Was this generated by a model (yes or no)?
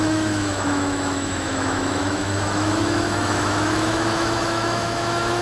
yes